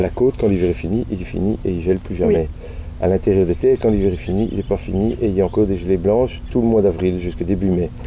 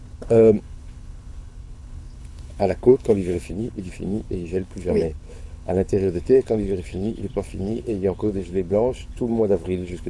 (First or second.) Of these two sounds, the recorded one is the first